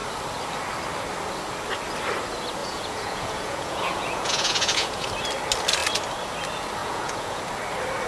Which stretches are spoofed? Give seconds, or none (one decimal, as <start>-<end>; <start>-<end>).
2.6-5.1; 6.8-7.4